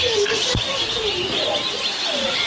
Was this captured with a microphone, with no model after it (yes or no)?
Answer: yes